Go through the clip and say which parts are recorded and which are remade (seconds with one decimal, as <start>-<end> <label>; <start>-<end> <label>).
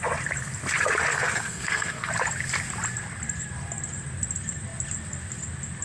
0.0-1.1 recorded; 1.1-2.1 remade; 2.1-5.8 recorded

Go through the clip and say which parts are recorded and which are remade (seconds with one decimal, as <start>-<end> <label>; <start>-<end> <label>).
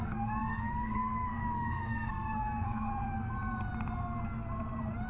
0.0-2.9 remade; 2.9-5.1 recorded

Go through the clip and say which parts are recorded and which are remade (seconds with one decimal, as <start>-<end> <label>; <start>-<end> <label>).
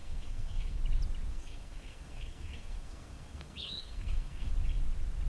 0.0-0.8 remade; 0.8-1.3 recorded; 1.3-4.5 remade; 4.5-5.3 recorded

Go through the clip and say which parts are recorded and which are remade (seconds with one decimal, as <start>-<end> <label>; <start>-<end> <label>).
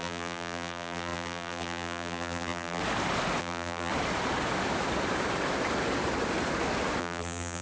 0.0-2.8 remade; 2.8-3.4 recorded; 3.4-3.9 remade; 3.9-7.0 recorded; 7.0-7.6 remade